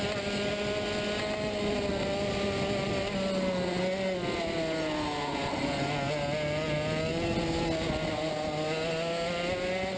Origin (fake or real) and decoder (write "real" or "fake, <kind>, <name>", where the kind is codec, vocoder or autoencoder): real